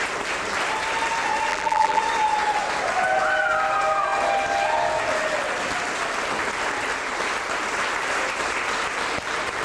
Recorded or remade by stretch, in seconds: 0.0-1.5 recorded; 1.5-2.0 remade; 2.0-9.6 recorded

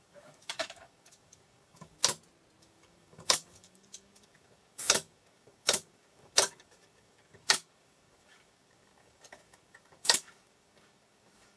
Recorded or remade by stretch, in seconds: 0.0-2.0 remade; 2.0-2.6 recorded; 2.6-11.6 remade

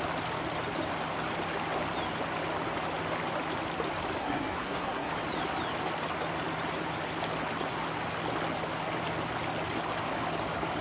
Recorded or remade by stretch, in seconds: 0.0-4.2 recorded; 4.2-5.1 remade; 5.1-10.8 recorded

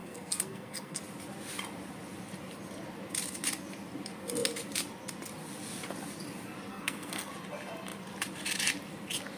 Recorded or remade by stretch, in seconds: 0.0-1.0 remade; 1.0-6.7 recorded; 6.7-7.3 remade; 7.3-9.4 recorded

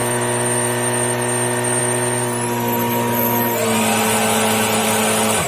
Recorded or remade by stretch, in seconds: 0.0-5.5 recorded